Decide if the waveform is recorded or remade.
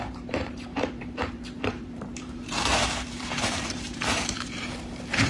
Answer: remade